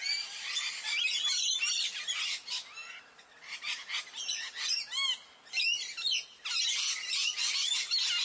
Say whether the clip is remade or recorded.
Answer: recorded